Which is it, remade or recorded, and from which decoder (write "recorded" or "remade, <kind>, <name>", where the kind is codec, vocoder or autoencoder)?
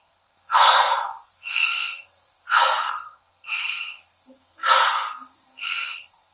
remade, codec, SNAC